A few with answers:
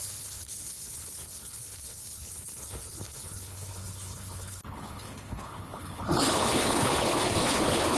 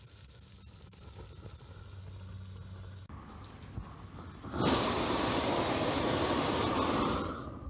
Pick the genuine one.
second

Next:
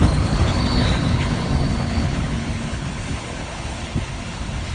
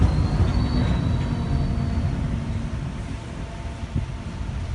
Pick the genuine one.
second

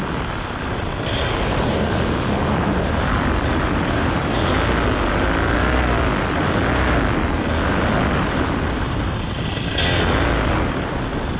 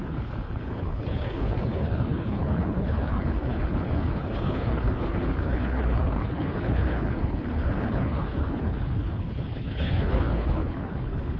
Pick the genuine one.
first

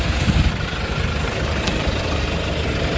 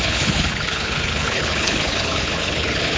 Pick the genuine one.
first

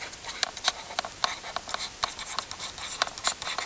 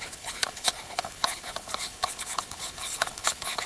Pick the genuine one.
first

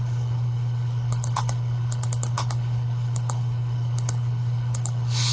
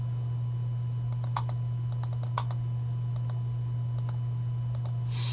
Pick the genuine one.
second